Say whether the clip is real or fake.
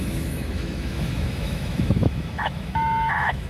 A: fake